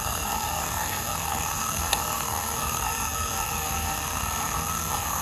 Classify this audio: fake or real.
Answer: fake